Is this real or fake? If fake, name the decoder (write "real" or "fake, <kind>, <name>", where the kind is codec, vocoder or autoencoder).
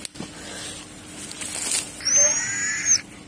real